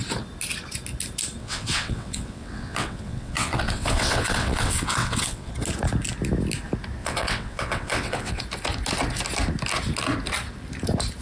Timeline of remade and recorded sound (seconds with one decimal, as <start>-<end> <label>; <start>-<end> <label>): 0.0-1.4 recorded; 1.4-5.5 remade; 5.5-7.0 recorded; 7.0-8.4 remade; 8.4-11.2 recorded